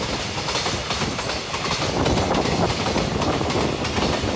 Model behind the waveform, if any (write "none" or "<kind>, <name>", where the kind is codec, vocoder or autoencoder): none